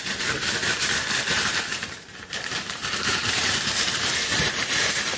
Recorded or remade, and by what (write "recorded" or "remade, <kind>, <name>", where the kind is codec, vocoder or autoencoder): remade, vocoder, BigVGAN v2